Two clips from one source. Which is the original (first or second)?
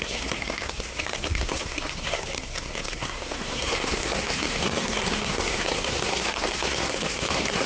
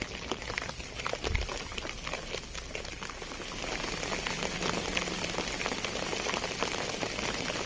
second